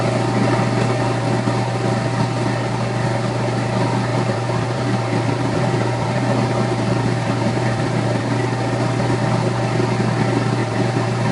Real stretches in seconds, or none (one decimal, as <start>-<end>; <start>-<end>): 0.0-4.1; 8.2-10.6